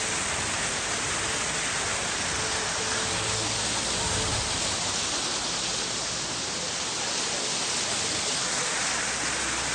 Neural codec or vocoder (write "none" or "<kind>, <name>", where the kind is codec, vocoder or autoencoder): none